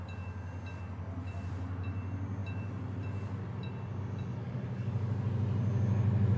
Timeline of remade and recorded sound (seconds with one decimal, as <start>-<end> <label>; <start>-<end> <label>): 0.0-4.4 recorded; 4.4-5.2 remade; 5.2-6.4 recorded